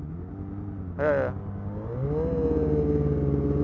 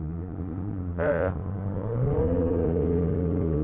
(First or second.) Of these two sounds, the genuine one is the first